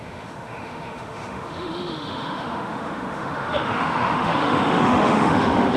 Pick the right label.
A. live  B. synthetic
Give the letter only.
B